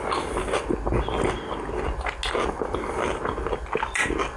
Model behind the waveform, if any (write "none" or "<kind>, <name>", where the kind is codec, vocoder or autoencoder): none